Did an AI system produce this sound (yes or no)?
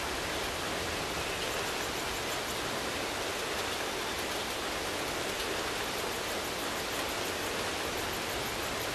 no